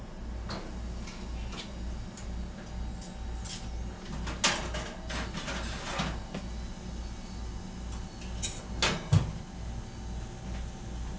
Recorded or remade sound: recorded